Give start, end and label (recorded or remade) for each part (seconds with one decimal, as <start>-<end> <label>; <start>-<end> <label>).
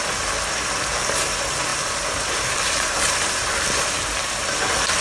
0.0-1.7 recorded; 1.7-3.9 remade; 3.9-5.0 recorded